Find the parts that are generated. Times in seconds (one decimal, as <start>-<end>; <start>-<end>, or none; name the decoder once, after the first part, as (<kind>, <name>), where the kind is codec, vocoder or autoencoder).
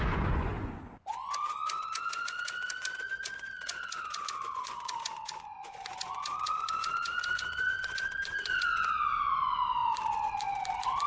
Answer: 0.0-9.8 (vocoder, Vocos)